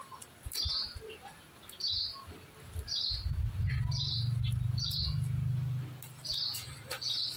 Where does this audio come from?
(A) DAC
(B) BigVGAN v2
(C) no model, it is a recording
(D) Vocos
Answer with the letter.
C